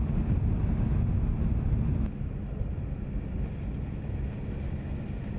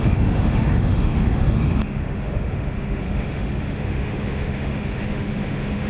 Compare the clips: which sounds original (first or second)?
first